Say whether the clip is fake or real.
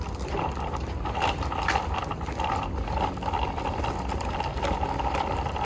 real